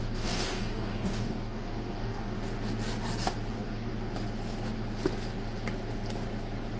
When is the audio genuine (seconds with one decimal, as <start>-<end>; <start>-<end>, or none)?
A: 2.4-3.5; 3.9-6.8